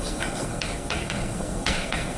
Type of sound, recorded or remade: remade